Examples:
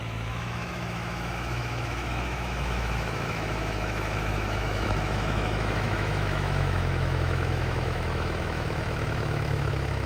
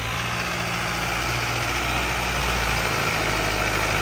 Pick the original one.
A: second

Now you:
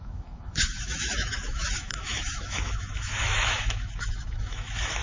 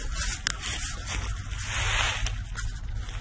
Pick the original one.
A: second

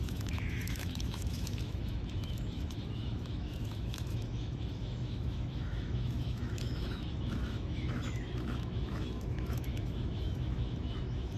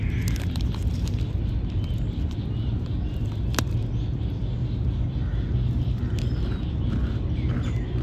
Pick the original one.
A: second